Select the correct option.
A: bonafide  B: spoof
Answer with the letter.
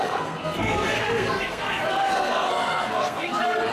B